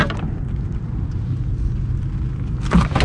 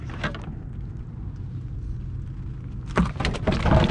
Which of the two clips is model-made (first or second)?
first